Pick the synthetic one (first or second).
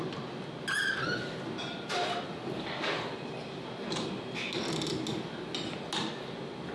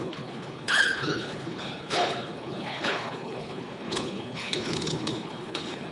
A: second